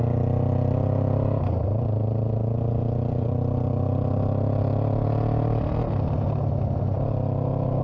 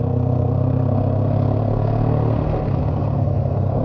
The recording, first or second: first